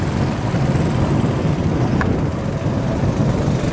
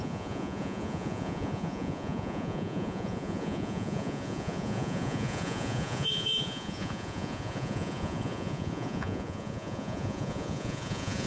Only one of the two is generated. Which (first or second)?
second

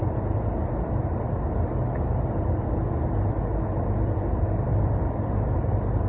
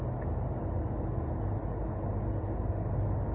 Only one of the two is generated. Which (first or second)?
first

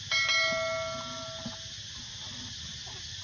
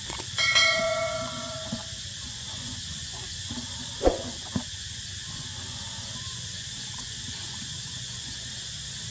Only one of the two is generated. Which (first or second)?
second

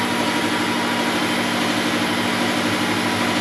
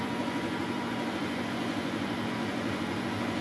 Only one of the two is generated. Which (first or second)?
second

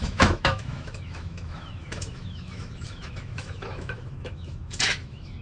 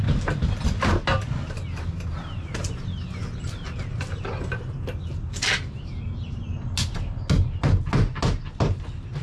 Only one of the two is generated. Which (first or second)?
first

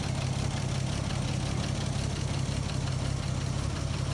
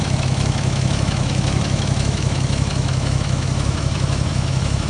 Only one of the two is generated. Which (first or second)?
second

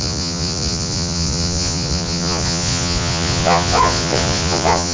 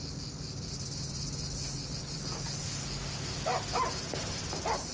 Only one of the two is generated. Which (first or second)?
first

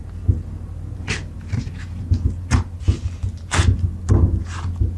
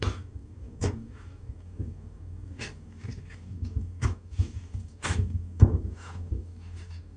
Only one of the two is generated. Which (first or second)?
second